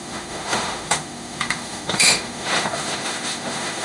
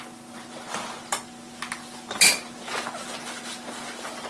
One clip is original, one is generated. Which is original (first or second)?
second